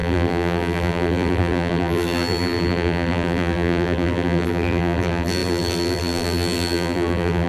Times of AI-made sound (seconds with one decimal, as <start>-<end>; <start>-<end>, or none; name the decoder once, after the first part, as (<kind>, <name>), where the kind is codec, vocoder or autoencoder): 0.0-7.5 (vocoder, BigVGAN v2)